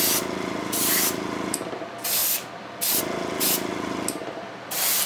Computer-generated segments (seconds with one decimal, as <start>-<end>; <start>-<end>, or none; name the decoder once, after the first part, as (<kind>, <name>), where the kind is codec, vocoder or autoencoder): none